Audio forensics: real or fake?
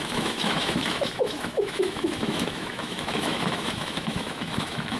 fake